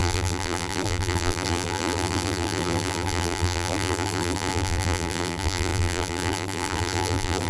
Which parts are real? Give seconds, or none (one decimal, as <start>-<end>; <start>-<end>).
none

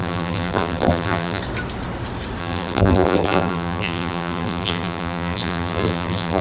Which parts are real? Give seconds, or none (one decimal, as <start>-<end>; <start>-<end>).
1.4-2.4

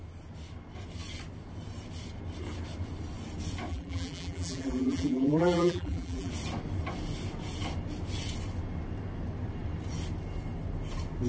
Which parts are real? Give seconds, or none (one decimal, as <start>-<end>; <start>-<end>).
0.0-3.7; 6.3-11.3

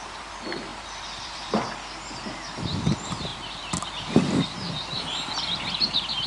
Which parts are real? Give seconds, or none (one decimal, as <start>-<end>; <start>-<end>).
0.0-0.7; 1.6-3.3; 3.9-6.3

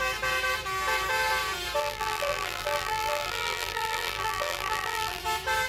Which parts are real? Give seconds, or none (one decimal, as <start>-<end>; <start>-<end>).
0.0-1.8; 5.2-5.7

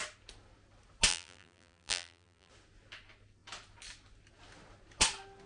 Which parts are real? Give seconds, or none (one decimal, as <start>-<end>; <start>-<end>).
0.0-1.1; 2.5-5.5

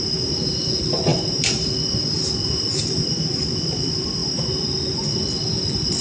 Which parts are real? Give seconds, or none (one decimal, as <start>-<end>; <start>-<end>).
1.1-3.1; 4.2-5.2